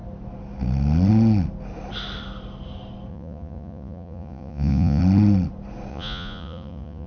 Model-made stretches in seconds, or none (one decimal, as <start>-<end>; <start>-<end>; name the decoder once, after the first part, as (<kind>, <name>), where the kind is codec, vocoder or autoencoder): 3.1-5.0 (vocoder, Vocos); 5.9-7.1